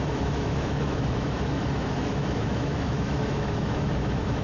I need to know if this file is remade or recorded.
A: remade